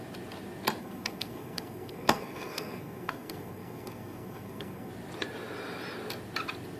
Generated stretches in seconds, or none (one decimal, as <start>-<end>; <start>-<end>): 0.8-4.9